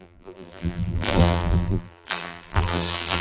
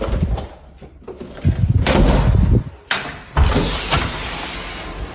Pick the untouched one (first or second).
second